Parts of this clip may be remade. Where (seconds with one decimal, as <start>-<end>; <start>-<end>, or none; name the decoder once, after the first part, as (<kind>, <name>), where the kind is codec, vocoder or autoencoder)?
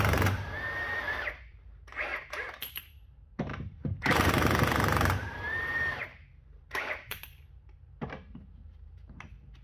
0.0-2.1 (vocoder, BigVGAN v2); 2.7-3.5; 4.3-9.6